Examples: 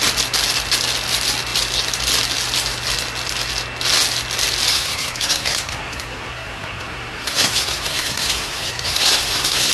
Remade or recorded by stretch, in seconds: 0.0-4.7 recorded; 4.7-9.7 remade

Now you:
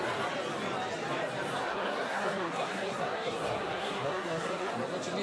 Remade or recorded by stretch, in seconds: 0.0-1.6 recorded; 1.6-4.7 remade; 4.7-5.2 recorded

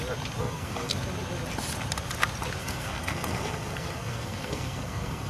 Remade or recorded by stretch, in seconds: 0.0-0.4 recorded; 0.4-0.9 remade; 0.9-2.6 recorded; 2.6-5.3 remade